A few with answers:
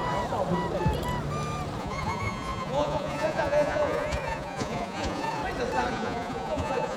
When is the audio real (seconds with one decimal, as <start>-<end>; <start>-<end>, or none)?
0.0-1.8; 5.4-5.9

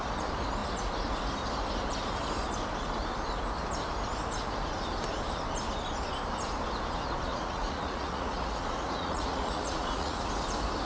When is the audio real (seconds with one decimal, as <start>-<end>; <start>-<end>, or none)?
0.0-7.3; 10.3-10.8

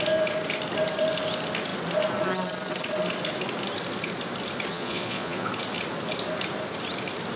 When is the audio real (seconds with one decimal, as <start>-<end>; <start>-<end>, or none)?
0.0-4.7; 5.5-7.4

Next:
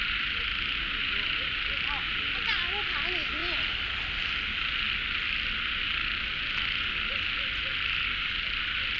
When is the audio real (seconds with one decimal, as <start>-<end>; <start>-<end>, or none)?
0.0-9.0

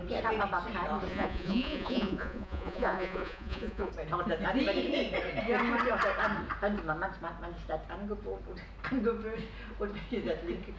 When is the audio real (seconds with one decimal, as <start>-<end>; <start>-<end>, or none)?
0.0-1.1; 3.9-10.8

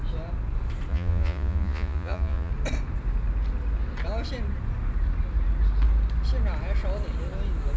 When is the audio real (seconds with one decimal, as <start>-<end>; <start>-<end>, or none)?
0.0-0.9; 2.5-7.8

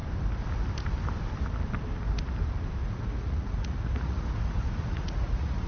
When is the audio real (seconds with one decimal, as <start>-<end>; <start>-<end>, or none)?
0.0-2.8

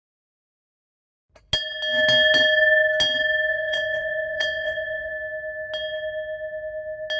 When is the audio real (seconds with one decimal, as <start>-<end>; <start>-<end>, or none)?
0.0-3.5; 5.1-7.2